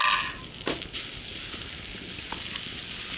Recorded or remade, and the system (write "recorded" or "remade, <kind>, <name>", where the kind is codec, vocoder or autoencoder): recorded